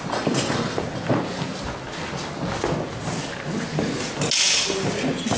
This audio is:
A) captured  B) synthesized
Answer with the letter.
A